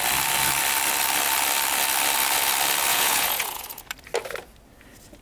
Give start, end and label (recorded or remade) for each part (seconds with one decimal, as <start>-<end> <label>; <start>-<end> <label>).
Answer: 0.0-2.9 recorded; 2.9-3.8 remade; 3.8-5.2 recorded

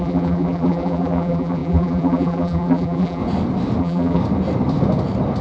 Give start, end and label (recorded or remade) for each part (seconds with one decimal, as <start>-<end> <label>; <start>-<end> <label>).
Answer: 0.0-3.2 remade; 3.2-3.8 recorded; 3.8-4.2 remade; 4.2-5.4 recorded

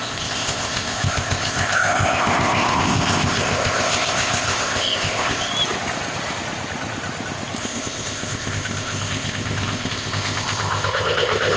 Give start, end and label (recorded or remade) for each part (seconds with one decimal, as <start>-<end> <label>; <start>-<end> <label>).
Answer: 0.0-5.5 remade; 5.5-7.6 recorded; 7.6-11.6 remade